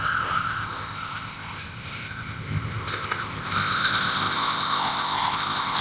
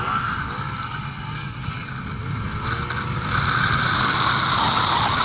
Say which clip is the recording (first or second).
second